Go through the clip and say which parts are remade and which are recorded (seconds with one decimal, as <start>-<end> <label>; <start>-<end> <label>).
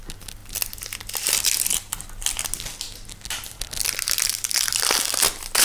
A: 0.0-5.6 recorded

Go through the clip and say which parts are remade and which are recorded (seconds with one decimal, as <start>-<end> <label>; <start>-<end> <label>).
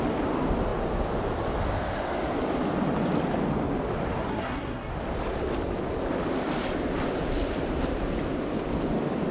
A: 0.0-4.3 recorded; 4.3-4.9 remade; 4.9-9.3 recorded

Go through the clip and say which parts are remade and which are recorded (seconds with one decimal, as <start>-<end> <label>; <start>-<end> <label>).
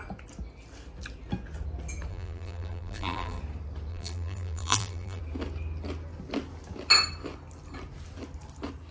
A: 0.0-2.1 recorded; 2.1-3.4 remade; 3.4-3.9 recorded; 3.9-5.2 remade; 5.2-8.9 recorded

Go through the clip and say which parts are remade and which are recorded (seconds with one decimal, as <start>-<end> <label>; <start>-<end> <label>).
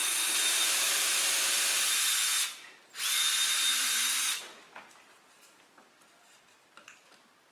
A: 0.0-2.0 remade; 2.0-3.7 recorded; 3.7-4.4 remade; 4.4-7.5 recorded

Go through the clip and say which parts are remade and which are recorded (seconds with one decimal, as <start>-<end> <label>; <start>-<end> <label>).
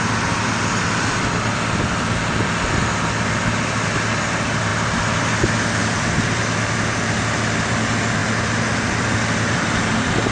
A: 0.0-10.3 recorded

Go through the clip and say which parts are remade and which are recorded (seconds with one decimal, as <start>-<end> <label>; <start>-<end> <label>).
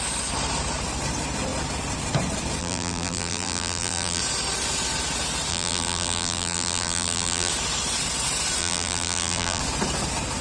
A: 0.0-2.6 recorded; 2.6-4.2 remade; 4.2-5.5 recorded; 5.5-7.5 remade; 7.5-8.6 recorded; 8.6-9.6 remade; 9.6-10.4 recorded